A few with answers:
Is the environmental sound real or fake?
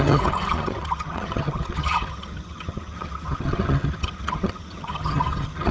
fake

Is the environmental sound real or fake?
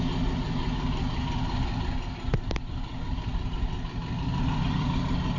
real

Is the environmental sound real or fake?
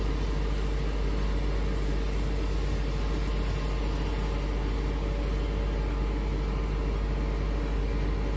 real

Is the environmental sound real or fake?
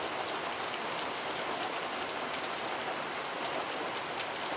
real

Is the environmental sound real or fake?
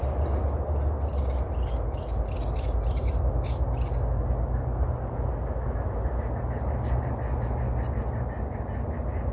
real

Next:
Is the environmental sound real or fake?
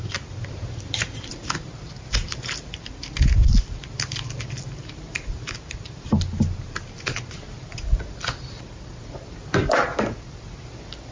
real